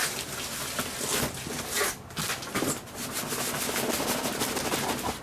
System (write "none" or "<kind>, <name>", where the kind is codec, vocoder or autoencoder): none